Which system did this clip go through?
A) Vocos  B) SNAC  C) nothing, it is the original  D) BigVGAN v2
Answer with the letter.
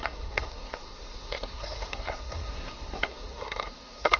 B